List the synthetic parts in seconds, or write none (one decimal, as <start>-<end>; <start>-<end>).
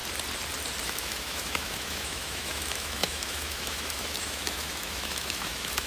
0.8-5.9